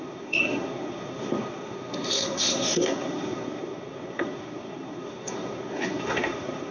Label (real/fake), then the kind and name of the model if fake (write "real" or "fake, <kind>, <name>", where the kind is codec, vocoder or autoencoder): fake, codec, SNAC